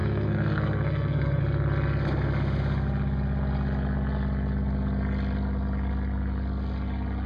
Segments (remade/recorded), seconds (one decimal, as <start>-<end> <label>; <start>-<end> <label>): 0.0-1.4 remade; 1.4-7.3 recorded